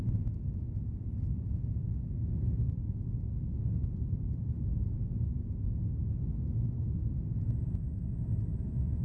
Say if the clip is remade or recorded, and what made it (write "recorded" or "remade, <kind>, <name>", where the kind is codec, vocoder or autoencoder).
recorded